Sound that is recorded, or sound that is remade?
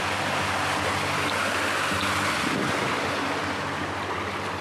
recorded